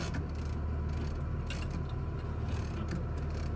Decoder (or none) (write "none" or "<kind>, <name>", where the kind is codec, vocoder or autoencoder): none